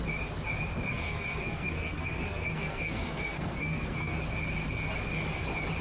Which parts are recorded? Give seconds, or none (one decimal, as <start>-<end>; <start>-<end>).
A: 0.0-0.9; 4.2-5.8